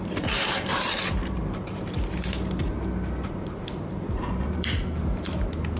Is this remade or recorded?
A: remade